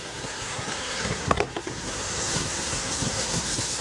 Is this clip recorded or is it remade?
remade